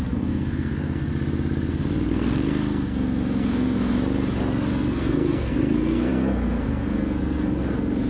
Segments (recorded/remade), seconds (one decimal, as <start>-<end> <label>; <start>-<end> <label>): 0.0-1.1 remade; 1.1-1.7 recorded; 1.7-3.9 remade; 3.9-4.7 recorded; 4.7-8.1 remade